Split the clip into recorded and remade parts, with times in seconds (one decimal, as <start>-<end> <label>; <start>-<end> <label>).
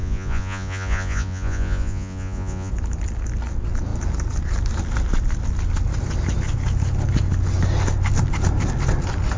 0.0-2.7 remade; 2.7-9.4 recorded